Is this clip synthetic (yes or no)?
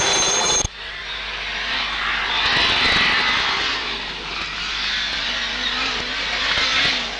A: no